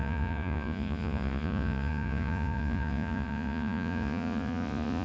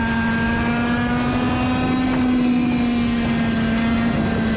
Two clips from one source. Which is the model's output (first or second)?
first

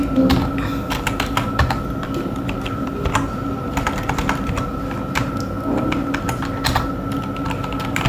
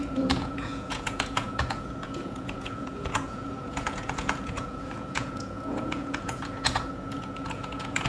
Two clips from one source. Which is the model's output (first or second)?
second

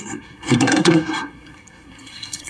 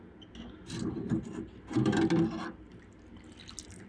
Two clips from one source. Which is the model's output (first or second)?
first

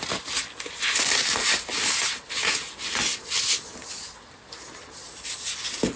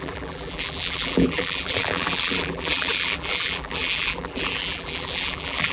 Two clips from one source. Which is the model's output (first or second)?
second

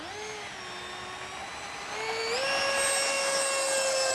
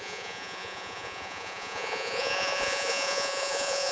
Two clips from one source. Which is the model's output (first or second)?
second